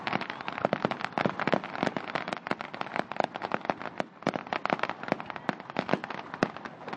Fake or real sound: real